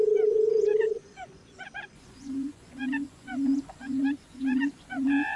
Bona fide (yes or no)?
no